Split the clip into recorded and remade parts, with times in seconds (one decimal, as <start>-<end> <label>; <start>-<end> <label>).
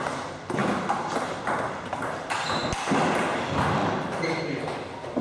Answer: 0.0-0.6 recorded; 0.6-2.0 remade; 2.0-3.8 recorded; 3.8-4.4 remade; 4.4-5.2 recorded